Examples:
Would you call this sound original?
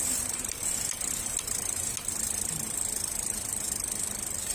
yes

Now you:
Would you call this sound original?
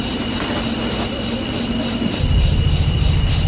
no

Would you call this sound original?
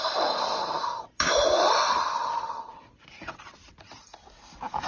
no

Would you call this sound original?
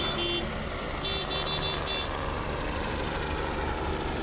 yes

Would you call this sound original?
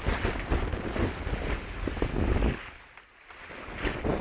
yes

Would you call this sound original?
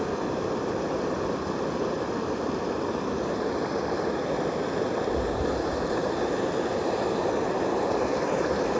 yes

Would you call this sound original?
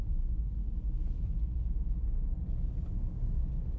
yes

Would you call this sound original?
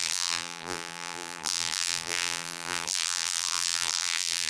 no